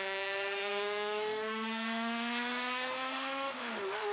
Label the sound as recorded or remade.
remade